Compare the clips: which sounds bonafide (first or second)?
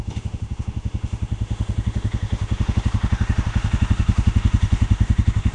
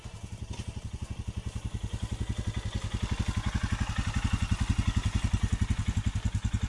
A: second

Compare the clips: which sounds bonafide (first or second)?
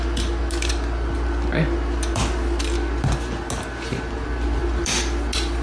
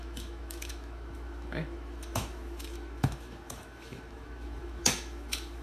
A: first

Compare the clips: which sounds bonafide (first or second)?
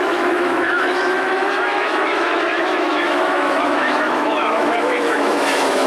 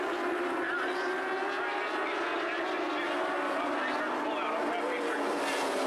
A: second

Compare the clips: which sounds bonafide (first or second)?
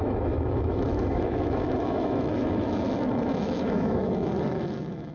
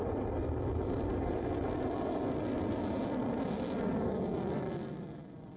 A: second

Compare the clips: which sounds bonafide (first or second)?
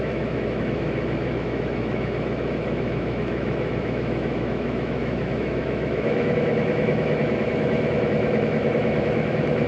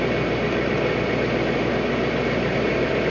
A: second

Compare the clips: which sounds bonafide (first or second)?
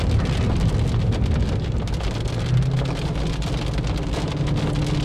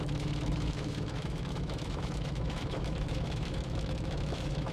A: first